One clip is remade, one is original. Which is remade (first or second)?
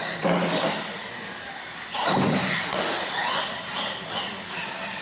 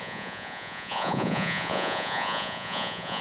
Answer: second